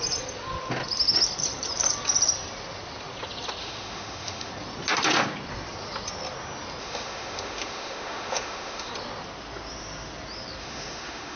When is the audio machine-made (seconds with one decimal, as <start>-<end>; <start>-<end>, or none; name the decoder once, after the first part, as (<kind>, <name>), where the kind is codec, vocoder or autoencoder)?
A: 3.6-4.5 (autoencoder, DAC-VAE); 6.8-8.9; 10.6-11.4